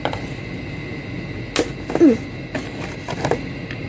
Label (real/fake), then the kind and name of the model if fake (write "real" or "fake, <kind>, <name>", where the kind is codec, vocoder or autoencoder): real